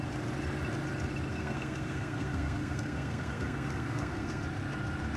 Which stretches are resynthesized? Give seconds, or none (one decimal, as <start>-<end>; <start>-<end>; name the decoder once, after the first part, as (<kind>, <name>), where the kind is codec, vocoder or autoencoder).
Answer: 1.3-4.4 (codec, SNAC)